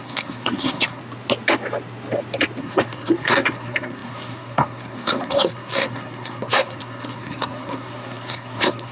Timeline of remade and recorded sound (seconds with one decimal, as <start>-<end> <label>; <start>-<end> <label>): 0.0-1.0 remade; 1.0-2.6 recorded; 2.6-8.9 remade